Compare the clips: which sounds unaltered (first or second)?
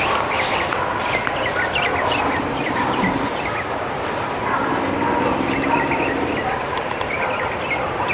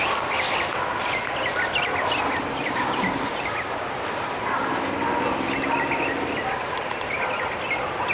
second